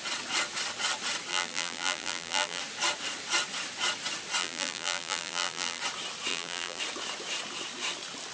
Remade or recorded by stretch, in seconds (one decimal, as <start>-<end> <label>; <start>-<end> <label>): 0.0-1.3 recorded; 1.3-2.6 remade; 2.6-4.4 recorded; 4.4-5.8 remade; 5.8-6.3 recorded; 6.3-6.8 remade; 6.8-8.3 recorded